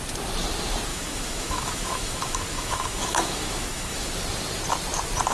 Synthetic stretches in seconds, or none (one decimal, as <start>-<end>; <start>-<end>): 0.9-4.1